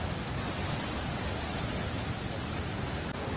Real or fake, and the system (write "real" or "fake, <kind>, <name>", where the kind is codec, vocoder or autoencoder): real